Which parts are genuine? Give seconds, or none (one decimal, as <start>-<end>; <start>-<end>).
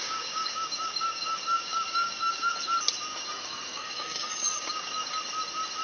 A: 2.5-3.1; 5.1-5.8